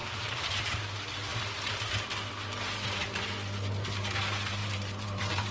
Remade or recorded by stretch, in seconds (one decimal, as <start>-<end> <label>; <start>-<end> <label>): 0.0-0.7 remade; 0.7-1.3 recorded; 1.3-3.2 remade; 3.2-4.6 recorded; 4.6-5.5 remade